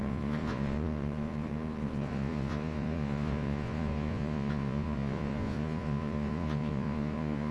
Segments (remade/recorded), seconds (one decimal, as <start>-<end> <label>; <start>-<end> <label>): 0.0-7.5 remade